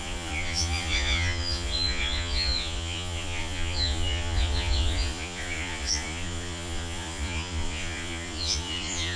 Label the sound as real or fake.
fake